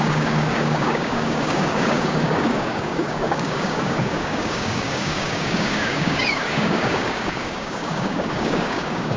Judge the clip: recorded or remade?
remade